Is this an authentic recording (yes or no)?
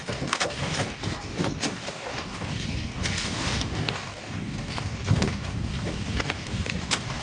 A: no